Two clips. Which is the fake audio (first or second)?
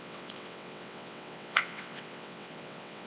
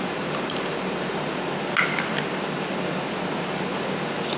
first